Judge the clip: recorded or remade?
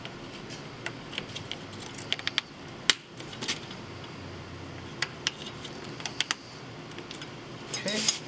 recorded